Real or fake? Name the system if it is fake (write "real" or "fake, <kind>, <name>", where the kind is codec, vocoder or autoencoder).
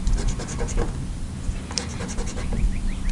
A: real